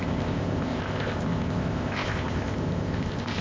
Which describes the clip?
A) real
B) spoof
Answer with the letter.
B